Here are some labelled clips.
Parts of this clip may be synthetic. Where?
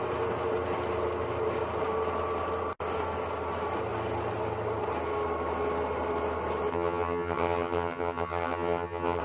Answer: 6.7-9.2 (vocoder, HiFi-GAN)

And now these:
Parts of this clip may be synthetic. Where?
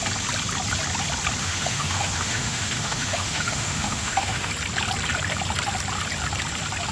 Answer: 1.4-4.5 (autoencoder, DAC-VAE)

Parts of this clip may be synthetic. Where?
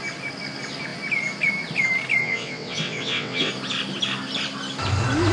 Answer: 2.2-3.5 (vocoder, WaveNeXt)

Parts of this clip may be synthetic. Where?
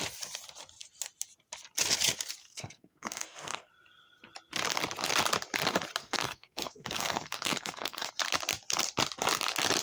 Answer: 2.4-3.7 (codec, SNAC); 6.0-8.1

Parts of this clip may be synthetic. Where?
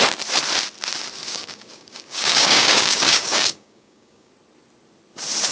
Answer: 1.2-4.3 (codec, DAC)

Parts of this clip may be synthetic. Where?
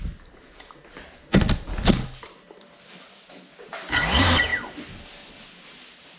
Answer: none